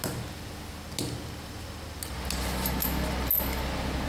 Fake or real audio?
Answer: real